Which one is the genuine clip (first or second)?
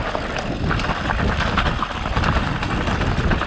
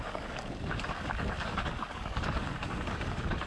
first